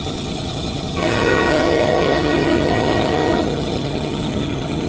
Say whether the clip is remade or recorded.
remade